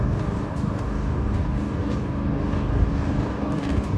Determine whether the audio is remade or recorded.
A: remade